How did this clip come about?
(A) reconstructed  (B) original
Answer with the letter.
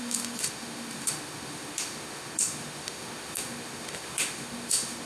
A